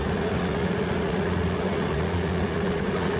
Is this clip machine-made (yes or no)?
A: yes